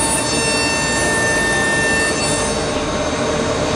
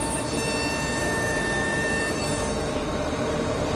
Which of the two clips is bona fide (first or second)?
first